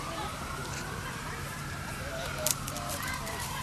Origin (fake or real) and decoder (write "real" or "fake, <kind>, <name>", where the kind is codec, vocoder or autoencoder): fake, vocoder, BigVGAN v2